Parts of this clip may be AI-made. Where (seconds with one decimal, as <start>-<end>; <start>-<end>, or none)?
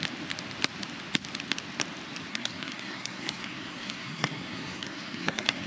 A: 2.3-5.7